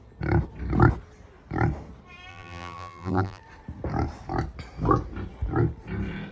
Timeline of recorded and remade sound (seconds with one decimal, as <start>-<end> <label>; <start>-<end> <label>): 0.0-2.3 recorded; 2.3-3.4 remade; 3.4-6.3 recorded

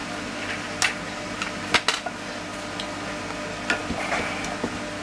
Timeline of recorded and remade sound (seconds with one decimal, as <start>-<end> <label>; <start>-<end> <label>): 0.0-5.0 recorded

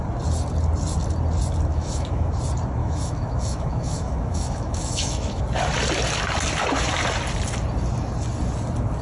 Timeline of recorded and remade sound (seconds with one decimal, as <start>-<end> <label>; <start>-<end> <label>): 0.0-1.7 recorded; 1.7-2.3 remade; 2.3-2.8 recorded; 2.8-5.4 remade; 5.4-9.0 recorded

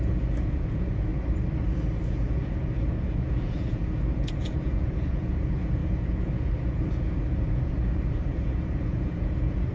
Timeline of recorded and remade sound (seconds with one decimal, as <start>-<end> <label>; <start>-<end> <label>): 0.0-1.1 remade; 1.1-2.1 recorded; 2.1-9.7 remade

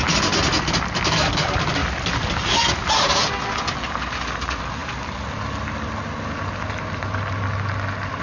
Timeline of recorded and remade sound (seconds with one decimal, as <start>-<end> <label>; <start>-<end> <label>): 0.0-8.2 recorded

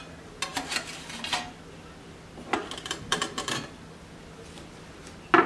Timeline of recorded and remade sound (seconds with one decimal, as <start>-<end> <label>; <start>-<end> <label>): 0.0-2.6 recorded; 2.6-5.0 remade; 5.0-5.5 recorded

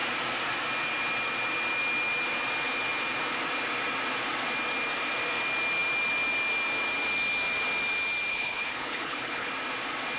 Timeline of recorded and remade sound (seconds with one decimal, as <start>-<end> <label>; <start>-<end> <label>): 0.0-8.3 recorded; 8.3-9.5 remade; 9.5-10.2 recorded

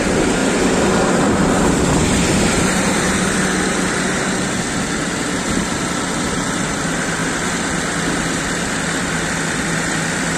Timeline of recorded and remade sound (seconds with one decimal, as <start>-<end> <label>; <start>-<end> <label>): 0.0-0.4 recorded; 0.4-3.9 remade; 3.9-10.4 recorded